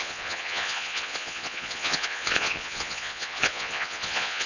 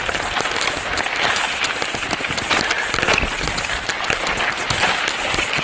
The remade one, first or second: first